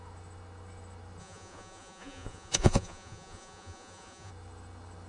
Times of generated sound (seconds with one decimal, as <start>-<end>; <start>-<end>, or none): 1.2-4.3